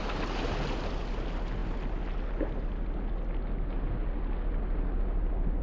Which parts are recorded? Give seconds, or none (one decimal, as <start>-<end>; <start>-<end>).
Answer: 0.0-5.6